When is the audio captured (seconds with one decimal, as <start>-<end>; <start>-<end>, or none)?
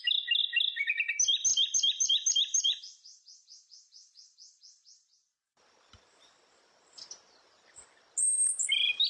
0.0-1.5; 2.8-9.1